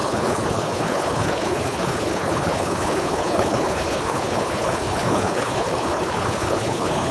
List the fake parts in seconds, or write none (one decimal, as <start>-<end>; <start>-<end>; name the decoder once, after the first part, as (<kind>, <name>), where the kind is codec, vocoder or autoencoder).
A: 0.0-7.1 (codec, HILCodec)